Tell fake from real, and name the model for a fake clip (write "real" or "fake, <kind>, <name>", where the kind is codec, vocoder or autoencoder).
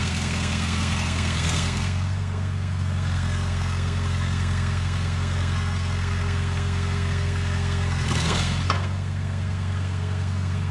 fake, codec, SNAC